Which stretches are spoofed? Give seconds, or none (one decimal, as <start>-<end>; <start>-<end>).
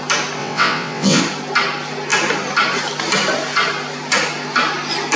0.4-1.2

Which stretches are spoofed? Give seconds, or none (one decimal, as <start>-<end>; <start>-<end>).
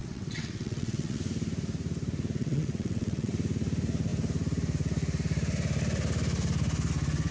0.0-1.2; 2.4-3.3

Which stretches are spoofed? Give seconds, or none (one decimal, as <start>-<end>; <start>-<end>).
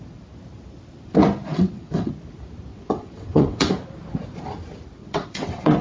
1.5-2.1; 2.7-3.7; 5.0-5.8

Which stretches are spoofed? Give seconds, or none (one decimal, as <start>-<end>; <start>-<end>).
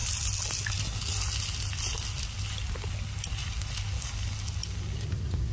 none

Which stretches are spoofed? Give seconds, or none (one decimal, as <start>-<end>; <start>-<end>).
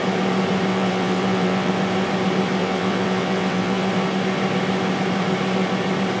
0.7-1.7; 2.6-3.9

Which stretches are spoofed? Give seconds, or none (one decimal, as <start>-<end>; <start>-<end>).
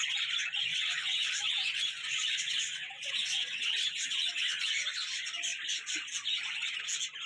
0.7-4.7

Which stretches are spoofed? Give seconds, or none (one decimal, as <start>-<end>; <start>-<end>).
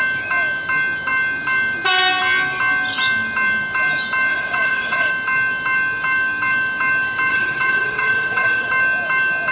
4.3-5.1; 7.3-8.7